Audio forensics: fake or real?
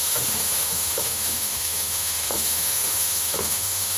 fake